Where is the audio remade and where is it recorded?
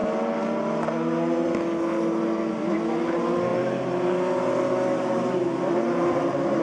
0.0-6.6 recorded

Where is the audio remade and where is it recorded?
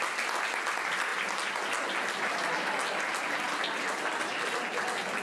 0.0-5.2 recorded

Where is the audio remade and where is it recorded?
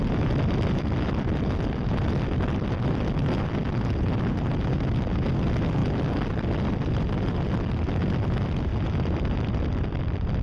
0.0-10.4 recorded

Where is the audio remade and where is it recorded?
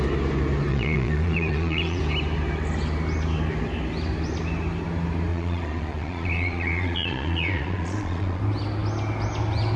0.0-0.7 recorded; 0.7-2.0 remade; 2.0-5.3 recorded; 5.3-8.4 remade; 8.4-9.8 recorded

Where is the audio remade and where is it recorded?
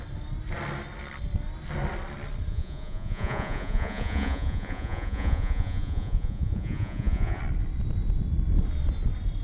0.0-2.5 recorded; 2.5-7.4 remade; 7.4-9.4 recorded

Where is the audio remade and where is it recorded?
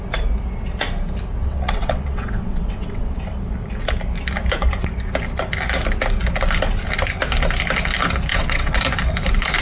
0.0-1.4 recorded; 1.4-3.2 remade; 3.2-8.3 recorded; 8.3-8.8 remade; 8.8-9.6 recorded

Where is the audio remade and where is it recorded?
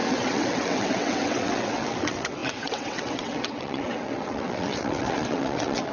0.0-5.9 remade